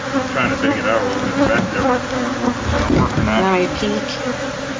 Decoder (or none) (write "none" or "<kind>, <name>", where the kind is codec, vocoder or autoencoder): none